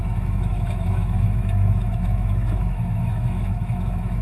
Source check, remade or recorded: remade